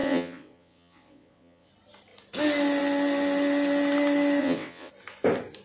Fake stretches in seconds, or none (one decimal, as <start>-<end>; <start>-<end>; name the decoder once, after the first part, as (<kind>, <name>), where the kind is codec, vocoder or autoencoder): 0.0-1.7 (vocoder, WaveNeXt); 4.4-4.9